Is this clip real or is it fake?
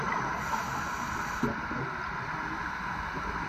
real